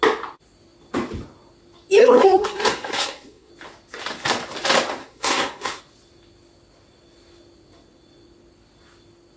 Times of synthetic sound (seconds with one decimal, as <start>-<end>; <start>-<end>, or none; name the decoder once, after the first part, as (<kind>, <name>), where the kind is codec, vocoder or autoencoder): 2.0-3.5 (codec, SNAC); 5.0-5.8